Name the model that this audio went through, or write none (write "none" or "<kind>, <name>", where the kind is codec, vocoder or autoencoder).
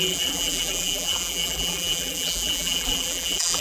vocoder, BigVGAN v2